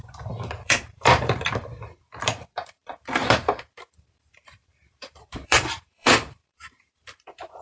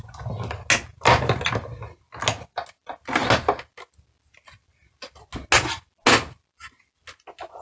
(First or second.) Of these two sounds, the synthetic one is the first